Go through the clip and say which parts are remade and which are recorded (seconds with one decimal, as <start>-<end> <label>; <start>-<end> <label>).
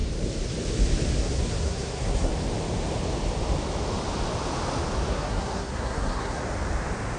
0.0-1.2 recorded; 1.2-2.3 remade; 2.3-5.1 recorded; 5.1-6.4 remade; 6.4-7.2 recorded